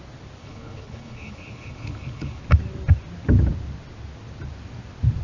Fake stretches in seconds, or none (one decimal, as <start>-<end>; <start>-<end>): 0.4-2.4